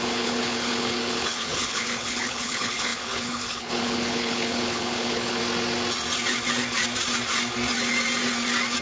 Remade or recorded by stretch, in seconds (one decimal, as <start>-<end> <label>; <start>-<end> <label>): 0.0-5.4 remade; 5.4-8.8 recorded